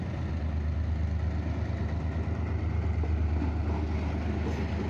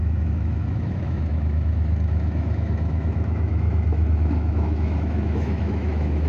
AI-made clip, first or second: second